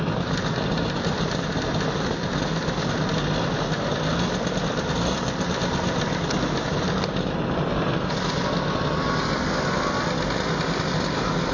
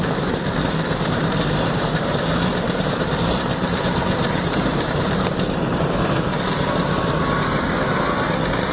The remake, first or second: second